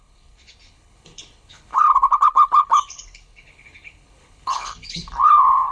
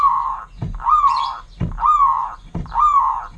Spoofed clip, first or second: first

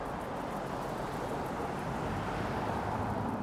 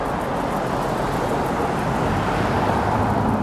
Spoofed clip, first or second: first